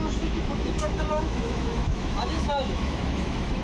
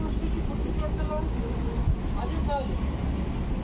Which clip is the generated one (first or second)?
first